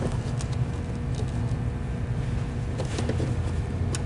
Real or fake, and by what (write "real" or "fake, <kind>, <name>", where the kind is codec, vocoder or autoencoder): real